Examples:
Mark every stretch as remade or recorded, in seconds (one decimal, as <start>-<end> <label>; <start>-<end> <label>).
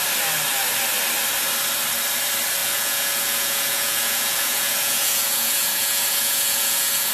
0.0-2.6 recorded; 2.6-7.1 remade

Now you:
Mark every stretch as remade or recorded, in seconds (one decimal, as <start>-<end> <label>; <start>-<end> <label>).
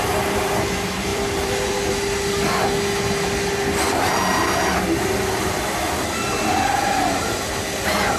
0.0-1.1 recorded; 1.1-1.9 remade; 1.9-8.2 recorded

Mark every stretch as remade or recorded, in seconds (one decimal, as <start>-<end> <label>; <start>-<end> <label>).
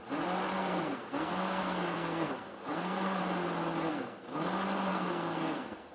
0.0-0.6 recorded; 0.6-3.2 remade; 3.2-3.9 recorded; 3.9-4.5 remade; 4.5-4.9 recorded; 4.9-5.9 remade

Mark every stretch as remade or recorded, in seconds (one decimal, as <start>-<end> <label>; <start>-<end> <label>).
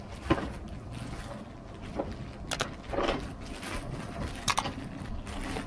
0.0-5.7 recorded